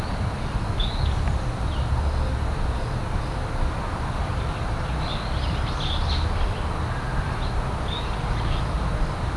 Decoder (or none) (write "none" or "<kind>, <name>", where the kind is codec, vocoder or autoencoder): none